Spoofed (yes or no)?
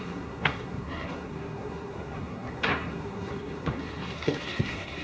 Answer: yes